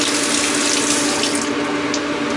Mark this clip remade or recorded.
recorded